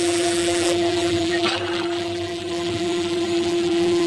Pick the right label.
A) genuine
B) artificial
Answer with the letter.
B